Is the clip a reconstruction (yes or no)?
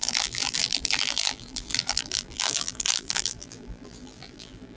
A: yes